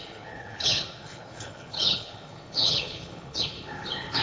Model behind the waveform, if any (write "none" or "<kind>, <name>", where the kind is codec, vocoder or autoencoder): codec, HILCodec